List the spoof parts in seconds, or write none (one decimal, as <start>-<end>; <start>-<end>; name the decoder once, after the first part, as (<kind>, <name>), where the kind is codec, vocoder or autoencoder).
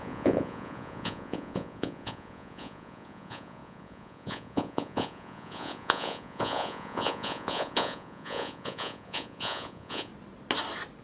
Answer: 0.0-10.1 (vocoder, Vocos)